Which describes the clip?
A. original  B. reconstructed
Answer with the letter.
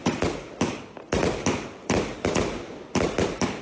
A